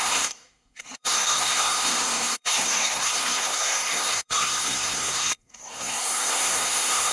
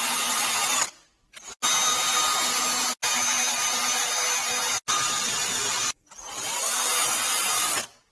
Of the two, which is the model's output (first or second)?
first